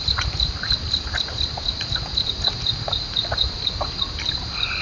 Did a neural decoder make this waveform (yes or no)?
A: no